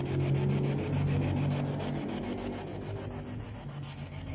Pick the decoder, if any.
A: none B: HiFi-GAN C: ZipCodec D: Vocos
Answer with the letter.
A